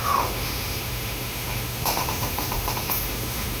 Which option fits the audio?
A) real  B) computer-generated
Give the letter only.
B